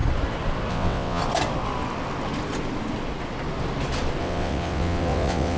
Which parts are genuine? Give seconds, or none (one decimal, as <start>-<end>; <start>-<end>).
0.0-0.7; 1.2-4.2